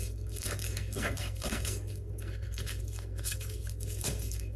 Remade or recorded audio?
remade